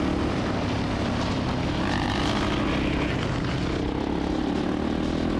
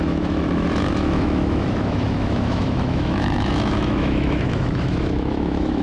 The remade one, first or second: second